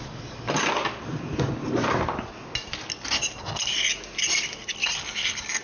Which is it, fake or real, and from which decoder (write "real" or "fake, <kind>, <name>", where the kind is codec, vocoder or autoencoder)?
real